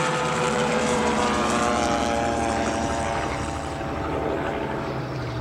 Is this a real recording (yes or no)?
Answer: no